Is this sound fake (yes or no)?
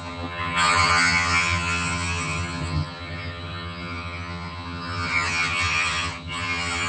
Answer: yes